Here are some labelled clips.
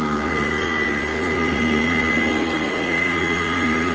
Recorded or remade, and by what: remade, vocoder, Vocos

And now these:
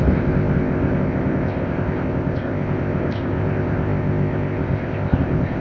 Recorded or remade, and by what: remade, codec, ZipCodec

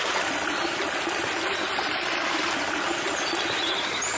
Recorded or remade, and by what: recorded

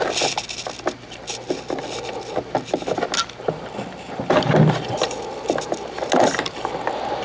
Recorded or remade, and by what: recorded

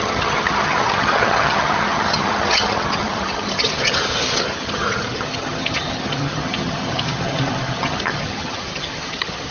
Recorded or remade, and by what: remade, vocoder, HiFi-GAN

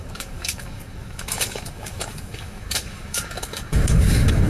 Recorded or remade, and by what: remade, codec, DAC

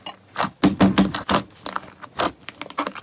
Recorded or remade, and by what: recorded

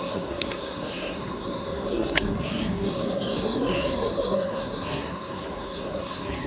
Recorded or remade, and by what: remade, codec, SNAC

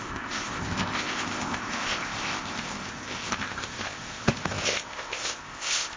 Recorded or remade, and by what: remade, codec, ZipCodec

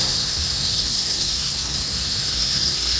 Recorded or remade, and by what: remade, codec, SNAC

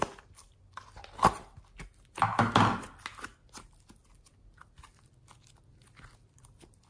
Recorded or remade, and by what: recorded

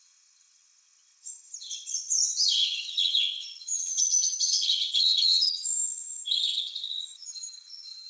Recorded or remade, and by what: remade, vocoder, HiFi-GAN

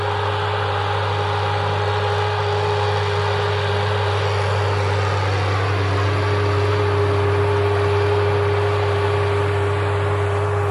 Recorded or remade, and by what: recorded